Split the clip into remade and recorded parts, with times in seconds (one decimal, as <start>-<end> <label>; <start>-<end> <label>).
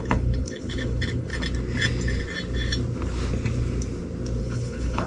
0.0-1.3 remade; 1.3-4.4 recorded; 4.4-5.1 remade